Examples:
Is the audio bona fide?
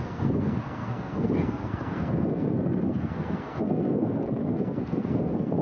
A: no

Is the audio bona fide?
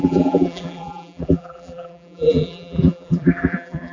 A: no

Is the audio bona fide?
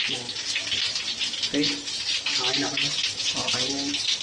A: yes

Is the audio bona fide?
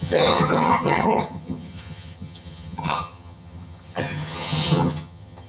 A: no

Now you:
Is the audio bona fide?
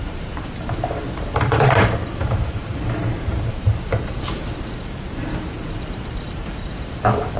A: no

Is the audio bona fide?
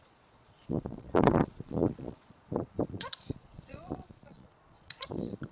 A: no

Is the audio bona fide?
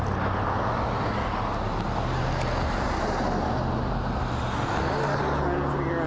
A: yes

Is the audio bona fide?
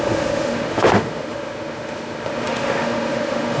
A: no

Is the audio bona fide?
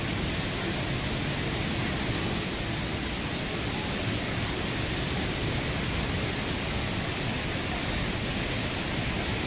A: yes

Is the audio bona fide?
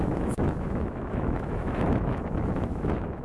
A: no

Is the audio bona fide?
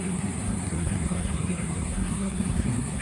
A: no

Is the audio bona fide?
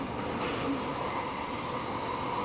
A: yes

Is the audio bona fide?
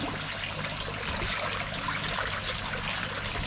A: yes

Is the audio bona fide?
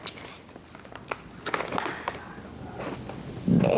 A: yes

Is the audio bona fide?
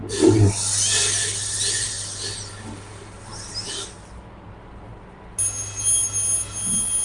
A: yes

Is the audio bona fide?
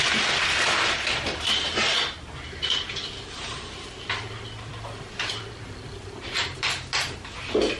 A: yes